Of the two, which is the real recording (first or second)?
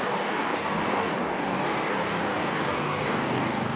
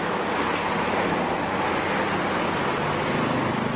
second